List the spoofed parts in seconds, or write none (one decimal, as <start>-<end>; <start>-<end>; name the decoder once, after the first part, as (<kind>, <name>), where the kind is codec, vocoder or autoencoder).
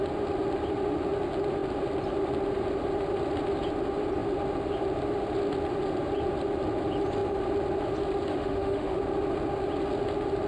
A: 8.3-9.0 (autoencoder, DAC-VAE)